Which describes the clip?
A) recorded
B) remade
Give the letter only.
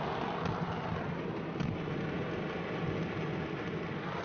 A